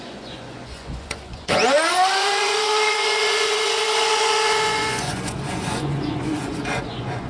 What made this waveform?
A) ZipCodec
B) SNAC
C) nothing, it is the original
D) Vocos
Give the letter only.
D